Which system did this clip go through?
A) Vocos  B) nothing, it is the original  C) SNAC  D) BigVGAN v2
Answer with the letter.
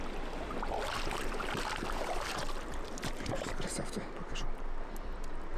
B